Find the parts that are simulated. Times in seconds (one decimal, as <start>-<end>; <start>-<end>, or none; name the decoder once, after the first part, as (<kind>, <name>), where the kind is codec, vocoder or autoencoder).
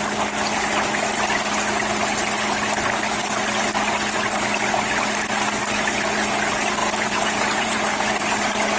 6.8-7.8 (vocoder, Vocos)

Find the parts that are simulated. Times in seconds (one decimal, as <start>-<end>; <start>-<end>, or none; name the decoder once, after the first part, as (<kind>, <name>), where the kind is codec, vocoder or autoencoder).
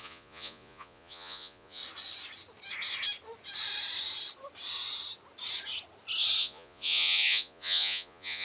0.0-1.8 (vocoder, Vocos); 6.4-8.4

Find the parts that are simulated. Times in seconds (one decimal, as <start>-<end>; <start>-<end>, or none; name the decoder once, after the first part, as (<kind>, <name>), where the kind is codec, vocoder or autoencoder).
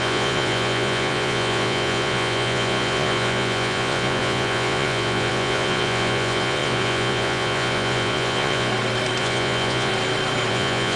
0.0-8.7 (vocoder, Vocos); 9.2-9.9; 10.5-11.0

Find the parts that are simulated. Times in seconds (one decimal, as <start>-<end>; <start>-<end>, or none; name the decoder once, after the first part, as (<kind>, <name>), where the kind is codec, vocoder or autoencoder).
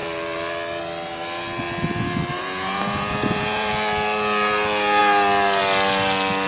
2.3-3.7 (vocoder, Vocos)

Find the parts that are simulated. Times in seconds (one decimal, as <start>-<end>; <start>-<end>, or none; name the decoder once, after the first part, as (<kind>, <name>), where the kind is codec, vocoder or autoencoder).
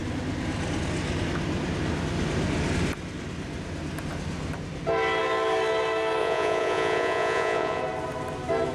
6.2-7.8 (vocoder, Vocos)